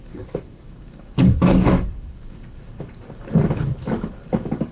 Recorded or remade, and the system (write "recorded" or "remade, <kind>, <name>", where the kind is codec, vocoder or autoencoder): remade, codec, DAC